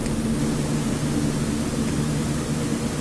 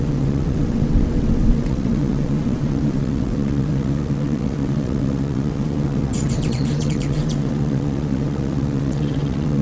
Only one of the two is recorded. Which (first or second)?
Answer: first